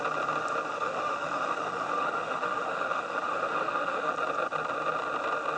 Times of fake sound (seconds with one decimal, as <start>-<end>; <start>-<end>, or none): 0.7-4.1